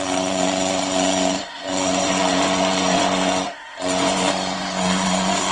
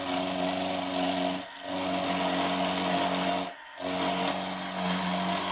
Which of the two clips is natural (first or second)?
second